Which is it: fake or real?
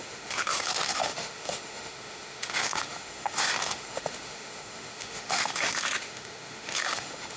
fake